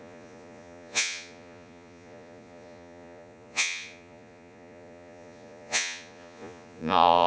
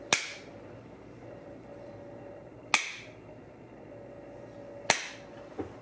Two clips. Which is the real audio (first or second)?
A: second